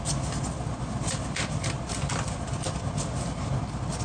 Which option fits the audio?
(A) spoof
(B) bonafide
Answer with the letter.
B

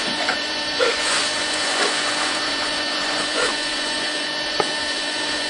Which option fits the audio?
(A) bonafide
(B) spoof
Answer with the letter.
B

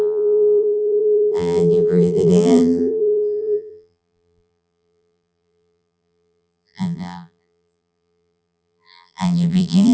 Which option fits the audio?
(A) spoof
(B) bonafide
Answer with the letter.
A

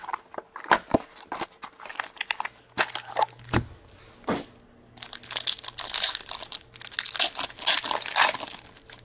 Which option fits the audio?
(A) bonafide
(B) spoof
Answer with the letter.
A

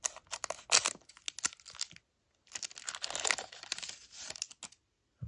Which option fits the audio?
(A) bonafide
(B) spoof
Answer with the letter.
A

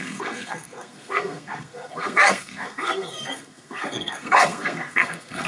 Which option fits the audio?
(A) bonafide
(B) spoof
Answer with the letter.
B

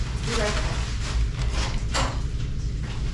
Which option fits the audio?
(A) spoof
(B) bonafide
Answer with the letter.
B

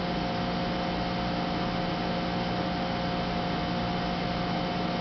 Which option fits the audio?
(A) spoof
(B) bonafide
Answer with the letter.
B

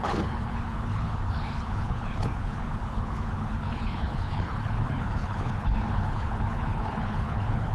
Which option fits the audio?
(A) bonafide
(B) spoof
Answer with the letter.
B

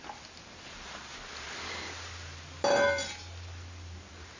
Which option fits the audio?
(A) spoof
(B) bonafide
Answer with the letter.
B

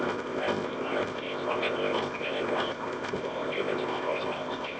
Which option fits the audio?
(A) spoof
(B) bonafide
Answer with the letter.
A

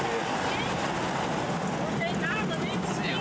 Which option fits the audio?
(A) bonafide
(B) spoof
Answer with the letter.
A